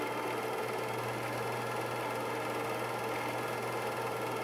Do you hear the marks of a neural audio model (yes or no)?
no